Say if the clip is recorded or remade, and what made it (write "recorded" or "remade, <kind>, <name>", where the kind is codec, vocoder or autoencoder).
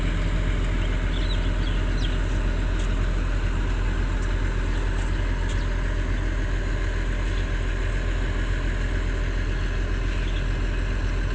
recorded